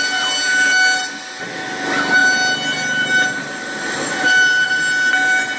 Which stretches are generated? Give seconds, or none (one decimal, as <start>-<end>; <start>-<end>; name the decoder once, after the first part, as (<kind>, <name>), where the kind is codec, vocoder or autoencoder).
2.2-4.7 (vocoder, BigVGAN v2)